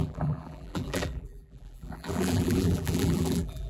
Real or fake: fake